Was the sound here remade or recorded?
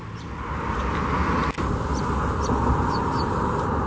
recorded